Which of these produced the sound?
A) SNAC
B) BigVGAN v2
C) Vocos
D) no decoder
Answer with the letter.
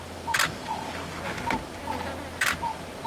D